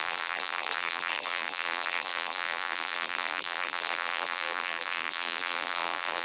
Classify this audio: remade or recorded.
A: remade